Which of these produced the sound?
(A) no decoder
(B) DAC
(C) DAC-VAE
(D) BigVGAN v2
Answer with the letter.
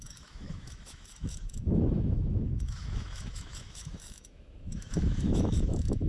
C